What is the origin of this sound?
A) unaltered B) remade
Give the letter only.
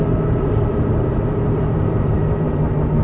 B